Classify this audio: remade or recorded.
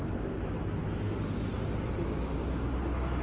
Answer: recorded